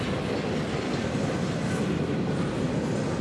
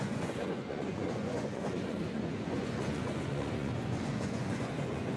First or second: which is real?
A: first